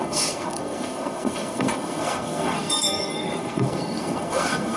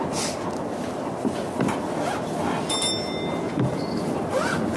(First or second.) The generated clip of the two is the first